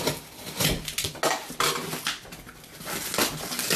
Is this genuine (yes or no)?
yes